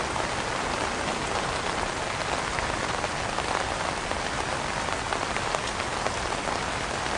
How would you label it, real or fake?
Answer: real